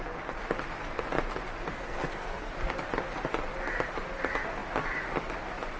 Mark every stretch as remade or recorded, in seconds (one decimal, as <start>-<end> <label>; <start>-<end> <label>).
0.0-1.7 recorded; 1.7-2.5 remade; 2.5-5.8 recorded